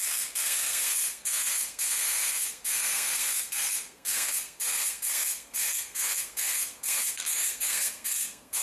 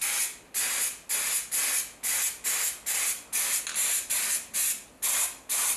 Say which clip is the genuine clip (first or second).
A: second